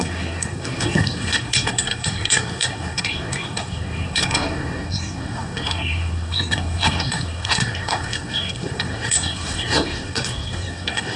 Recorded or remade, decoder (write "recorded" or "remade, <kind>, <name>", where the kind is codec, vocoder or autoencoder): remade, codec, SNAC